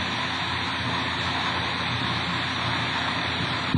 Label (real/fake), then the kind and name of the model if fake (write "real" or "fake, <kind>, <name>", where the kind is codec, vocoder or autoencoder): real